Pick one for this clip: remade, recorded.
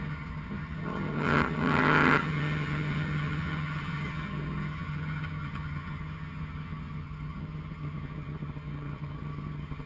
remade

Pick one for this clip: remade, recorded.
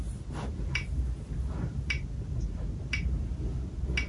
recorded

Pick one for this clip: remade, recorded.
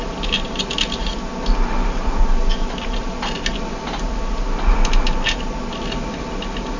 recorded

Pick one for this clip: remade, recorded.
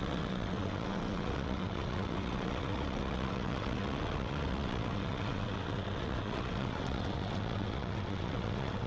remade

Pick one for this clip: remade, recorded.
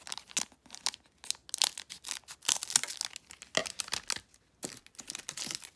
recorded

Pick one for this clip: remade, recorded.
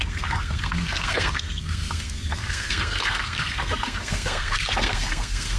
remade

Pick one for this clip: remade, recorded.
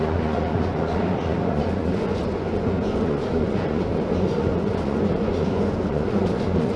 remade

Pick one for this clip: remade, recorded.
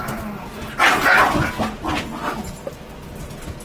recorded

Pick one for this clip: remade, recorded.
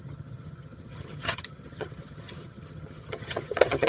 remade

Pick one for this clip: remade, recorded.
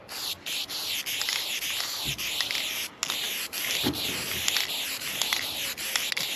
recorded